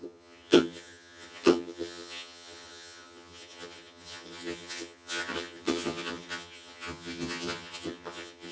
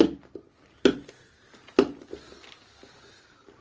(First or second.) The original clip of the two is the second